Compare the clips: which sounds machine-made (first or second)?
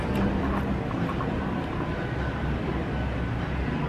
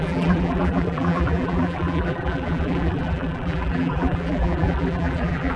second